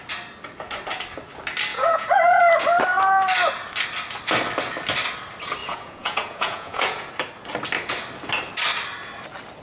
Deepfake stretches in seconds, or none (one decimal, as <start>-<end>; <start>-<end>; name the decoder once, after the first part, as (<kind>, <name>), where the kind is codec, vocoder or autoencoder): 1.7-2.4 (vocoder, Vocos); 5.6-7.1